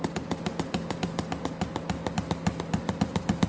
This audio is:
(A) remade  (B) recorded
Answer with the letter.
B